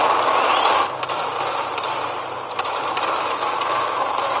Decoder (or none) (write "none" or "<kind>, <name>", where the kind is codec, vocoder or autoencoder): none